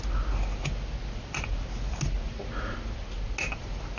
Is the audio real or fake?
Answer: real